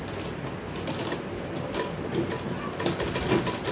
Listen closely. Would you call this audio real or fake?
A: real